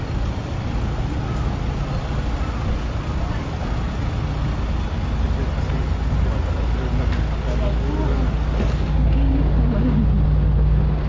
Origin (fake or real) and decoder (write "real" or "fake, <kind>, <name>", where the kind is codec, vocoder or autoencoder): real